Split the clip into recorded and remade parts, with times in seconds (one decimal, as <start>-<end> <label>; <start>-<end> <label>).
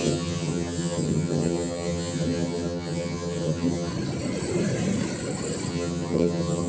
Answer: 0.0-3.9 remade; 3.9-5.7 recorded; 5.7-6.7 remade